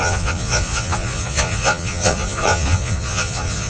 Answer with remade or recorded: remade